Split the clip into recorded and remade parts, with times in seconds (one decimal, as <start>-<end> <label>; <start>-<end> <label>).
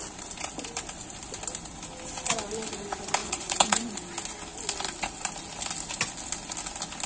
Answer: 0.0-3.2 recorded; 3.2-3.9 remade; 3.9-7.1 recorded